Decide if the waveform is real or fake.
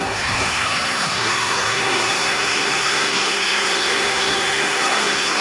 fake